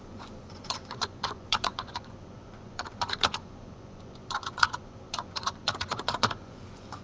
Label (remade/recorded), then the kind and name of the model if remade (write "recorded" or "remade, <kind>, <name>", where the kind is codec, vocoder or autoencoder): remade, vocoder, Vocos